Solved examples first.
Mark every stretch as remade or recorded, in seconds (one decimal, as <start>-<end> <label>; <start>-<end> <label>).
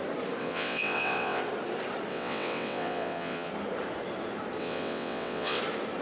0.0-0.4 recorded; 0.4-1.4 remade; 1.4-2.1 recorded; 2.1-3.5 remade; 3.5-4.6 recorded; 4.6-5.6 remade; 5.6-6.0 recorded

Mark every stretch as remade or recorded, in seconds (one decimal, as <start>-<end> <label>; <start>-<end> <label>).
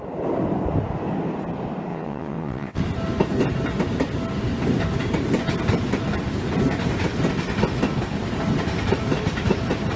0.0-1.9 recorded; 1.9-2.8 remade; 2.8-10.0 recorded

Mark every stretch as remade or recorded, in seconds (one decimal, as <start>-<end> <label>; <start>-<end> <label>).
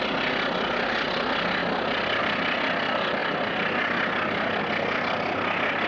0.0-5.9 recorded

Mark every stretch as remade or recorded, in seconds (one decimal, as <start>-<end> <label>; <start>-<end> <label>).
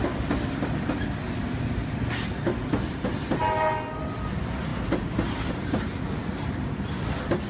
0.0-7.5 recorded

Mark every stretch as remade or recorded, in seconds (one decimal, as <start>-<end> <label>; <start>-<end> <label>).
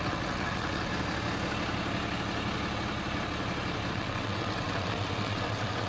0.0-0.9 remade; 0.9-3.9 recorded; 3.9-5.9 remade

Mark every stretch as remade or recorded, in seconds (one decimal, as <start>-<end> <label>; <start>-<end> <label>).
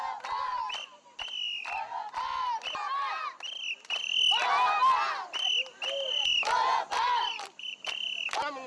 0.0-8.7 recorded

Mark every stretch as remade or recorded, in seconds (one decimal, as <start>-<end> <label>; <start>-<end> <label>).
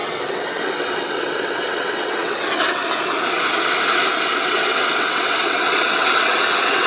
0.0-2.8 remade; 2.8-4.4 recorded; 4.4-6.9 remade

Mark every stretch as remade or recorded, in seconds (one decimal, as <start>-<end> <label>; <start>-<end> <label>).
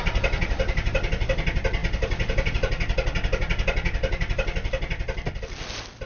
0.0-6.1 recorded